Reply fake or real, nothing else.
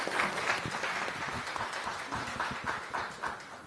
real